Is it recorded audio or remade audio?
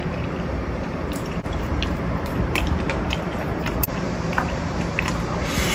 remade